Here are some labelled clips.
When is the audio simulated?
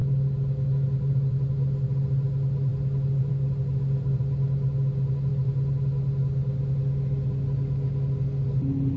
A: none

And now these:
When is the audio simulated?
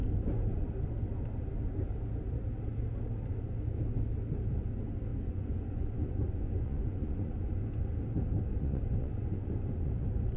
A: 5.1-7.6 (vocoder, Vocos); 8.5-9.9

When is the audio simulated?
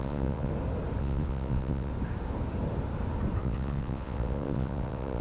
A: 0.0-0.5 (vocoder, WaveNeXt); 1.0-1.9; 3.4-5.2